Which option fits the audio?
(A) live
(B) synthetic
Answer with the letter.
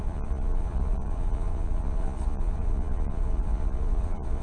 B